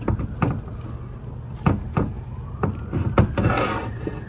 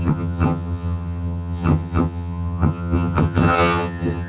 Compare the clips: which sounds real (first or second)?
first